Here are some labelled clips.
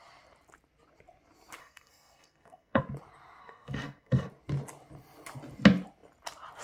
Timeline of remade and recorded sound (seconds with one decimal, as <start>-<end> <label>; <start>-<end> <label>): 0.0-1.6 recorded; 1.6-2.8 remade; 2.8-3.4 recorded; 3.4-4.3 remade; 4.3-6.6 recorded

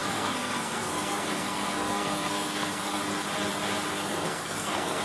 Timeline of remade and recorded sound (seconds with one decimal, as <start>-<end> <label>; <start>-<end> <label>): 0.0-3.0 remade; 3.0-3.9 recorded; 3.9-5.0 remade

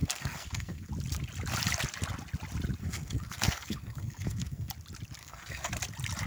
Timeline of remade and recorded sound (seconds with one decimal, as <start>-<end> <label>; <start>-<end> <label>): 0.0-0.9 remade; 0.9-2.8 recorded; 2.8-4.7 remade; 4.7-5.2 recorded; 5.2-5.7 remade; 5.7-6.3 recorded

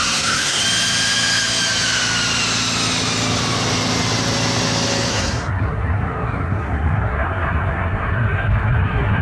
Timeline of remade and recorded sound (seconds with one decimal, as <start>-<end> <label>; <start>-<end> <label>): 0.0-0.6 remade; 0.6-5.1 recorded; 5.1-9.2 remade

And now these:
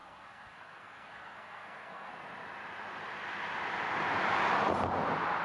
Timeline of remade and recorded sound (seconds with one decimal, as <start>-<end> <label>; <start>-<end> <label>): 0.0-2.1 remade; 2.1-5.4 recorded

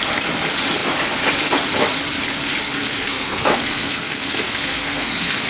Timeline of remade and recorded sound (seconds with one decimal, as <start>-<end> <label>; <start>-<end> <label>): 0.0-2.7 recorded; 2.7-5.5 remade

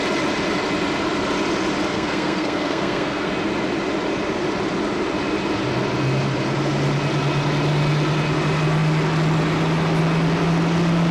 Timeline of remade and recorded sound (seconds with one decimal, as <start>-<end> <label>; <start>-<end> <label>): 0.0-1.9 recorded; 1.9-3.3 remade; 3.3-11.1 recorded